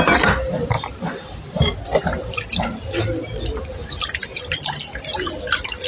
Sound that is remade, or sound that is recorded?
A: recorded